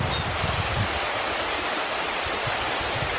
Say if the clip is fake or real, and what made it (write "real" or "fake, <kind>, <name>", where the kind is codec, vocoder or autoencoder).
real